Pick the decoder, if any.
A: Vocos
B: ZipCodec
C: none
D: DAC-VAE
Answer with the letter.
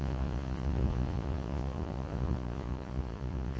A